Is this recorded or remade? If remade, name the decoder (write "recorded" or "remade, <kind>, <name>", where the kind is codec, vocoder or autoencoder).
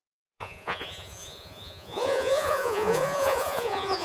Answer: remade, vocoder, Vocos